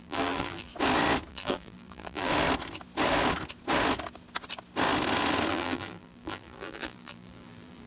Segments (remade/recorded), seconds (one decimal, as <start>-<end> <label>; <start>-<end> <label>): 0.0-0.7 remade; 0.7-1.3 recorded; 1.3-2.3 remade; 2.3-5.5 recorded; 5.5-7.9 remade